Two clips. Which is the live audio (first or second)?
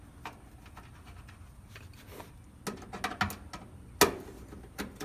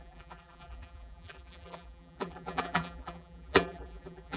first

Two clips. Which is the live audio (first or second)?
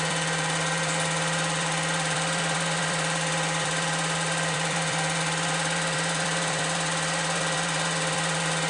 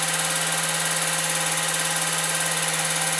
second